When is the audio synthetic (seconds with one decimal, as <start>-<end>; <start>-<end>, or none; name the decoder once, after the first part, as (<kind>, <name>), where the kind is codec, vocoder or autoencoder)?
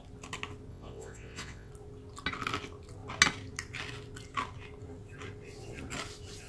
0.7-1.7 (vocoder, WaveNeXt)